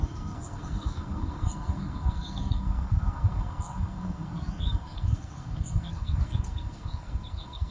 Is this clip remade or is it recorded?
remade